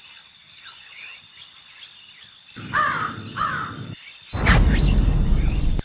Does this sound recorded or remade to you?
recorded